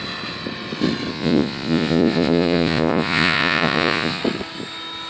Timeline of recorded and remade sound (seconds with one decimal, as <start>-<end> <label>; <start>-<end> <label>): 0.0-1.1 recorded; 1.1-4.2 remade; 4.2-5.1 recorded